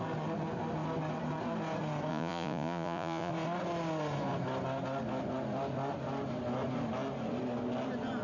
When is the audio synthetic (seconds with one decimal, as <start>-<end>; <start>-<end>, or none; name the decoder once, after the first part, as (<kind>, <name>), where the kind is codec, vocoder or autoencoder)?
2.1-3.3 (vocoder, Vocos)